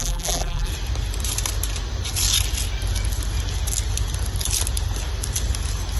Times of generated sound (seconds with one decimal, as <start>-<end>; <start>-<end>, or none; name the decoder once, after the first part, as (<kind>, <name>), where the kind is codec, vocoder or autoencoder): 0.0-0.7 (vocoder, BigVGAN v2)